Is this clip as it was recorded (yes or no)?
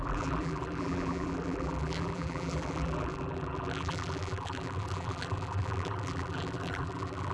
no